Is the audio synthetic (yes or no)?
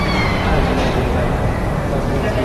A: yes